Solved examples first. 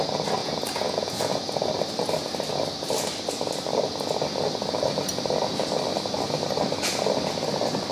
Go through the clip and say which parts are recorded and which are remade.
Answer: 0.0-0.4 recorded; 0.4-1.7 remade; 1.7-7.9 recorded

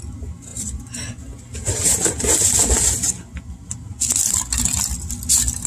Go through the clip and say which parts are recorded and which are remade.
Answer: 0.0-5.7 recorded

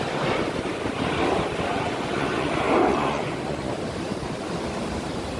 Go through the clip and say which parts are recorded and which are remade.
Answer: 0.0-1.7 recorded; 1.7-2.5 remade; 2.5-2.9 recorded; 2.9-3.7 remade; 3.7-5.4 recorded

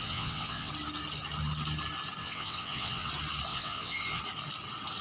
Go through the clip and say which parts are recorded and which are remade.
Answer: 0.0-0.7 remade; 0.7-2.2 recorded; 2.2-3.1 remade; 3.1-3.5 recorded; 3.5-4.2 remade; 4.2-5.0 recorded